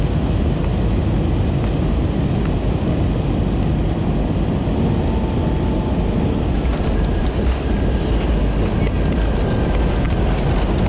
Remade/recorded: recorded